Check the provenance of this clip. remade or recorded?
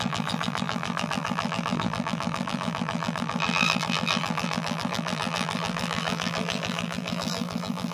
remade